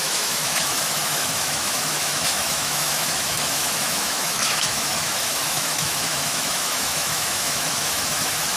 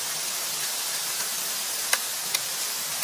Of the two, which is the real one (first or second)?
second